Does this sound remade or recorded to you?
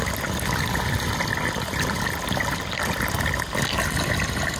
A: recorded